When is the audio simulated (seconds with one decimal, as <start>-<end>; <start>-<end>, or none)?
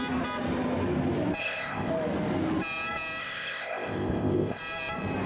1.4-1.9; 3.2-4.6